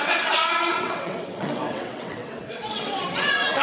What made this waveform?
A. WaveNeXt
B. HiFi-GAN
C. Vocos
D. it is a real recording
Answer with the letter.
A